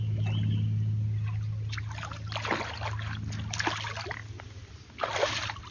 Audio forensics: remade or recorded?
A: recorded